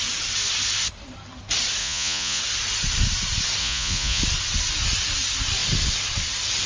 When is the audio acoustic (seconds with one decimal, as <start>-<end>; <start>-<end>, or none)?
0.0-1.8; 2.4-3.6; 4.2-6.7